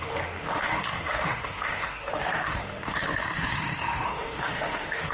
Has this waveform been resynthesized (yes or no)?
yes